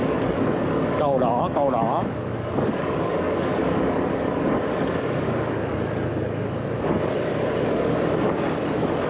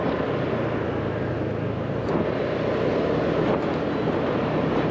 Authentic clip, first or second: second